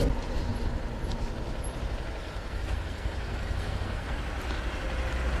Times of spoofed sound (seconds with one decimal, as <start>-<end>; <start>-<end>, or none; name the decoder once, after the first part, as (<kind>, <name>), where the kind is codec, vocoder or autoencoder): 2.2-4.2 (codec, SNAC)